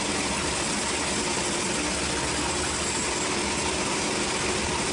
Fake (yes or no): no